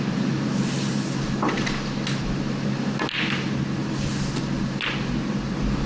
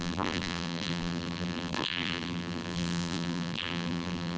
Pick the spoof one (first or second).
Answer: second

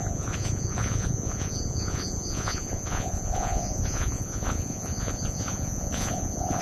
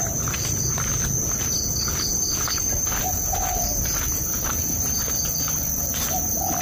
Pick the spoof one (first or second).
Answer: first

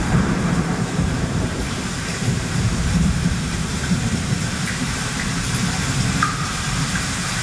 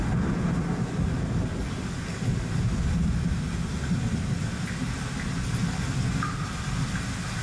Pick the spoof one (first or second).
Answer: first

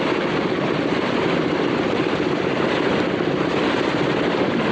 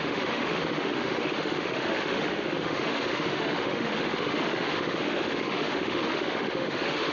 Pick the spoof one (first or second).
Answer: second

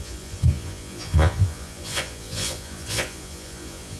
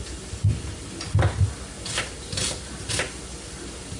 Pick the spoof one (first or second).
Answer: first